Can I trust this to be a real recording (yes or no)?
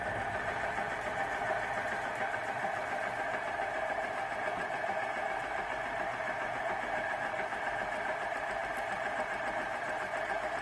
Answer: yes